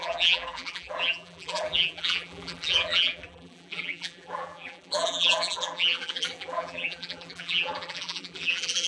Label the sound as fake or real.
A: fake